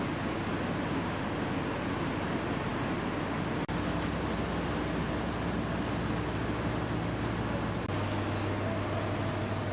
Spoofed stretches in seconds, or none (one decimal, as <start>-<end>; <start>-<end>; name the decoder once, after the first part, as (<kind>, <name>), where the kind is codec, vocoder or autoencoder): none